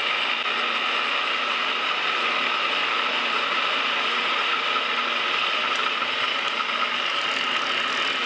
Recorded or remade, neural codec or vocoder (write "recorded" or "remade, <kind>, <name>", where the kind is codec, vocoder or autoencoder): recorded